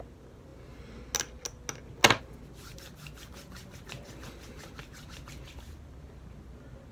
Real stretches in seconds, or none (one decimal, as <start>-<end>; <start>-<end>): 0.0-6.9